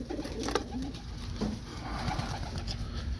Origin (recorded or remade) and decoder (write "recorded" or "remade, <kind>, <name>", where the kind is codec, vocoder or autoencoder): recorded